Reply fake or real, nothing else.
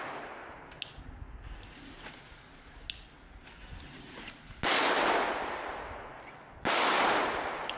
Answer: real